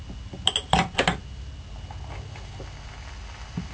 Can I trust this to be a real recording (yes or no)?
yes